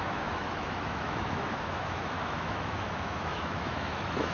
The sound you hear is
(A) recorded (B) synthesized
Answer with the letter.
B